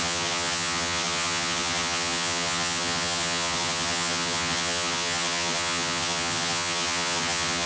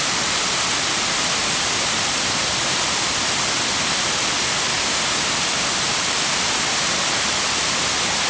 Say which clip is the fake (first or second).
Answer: first